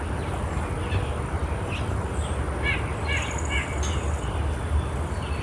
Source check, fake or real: real